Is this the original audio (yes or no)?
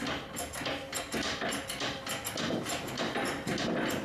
yes